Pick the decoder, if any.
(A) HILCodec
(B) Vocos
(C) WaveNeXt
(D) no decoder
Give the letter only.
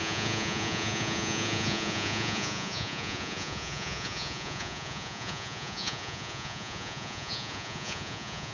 B